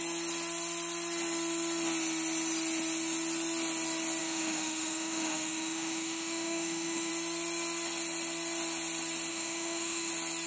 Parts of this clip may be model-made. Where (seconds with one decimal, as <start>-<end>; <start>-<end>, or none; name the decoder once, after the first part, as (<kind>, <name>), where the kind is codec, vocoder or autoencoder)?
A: 4.2-7.1 (autoencoder, DAC-VAE); 9.3-10.1